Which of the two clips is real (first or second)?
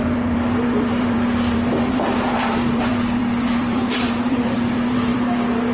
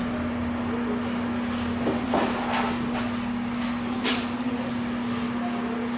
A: second